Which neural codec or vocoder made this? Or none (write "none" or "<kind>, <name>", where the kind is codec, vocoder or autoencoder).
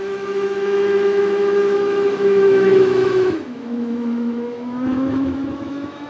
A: autoencoder, DAC-VAE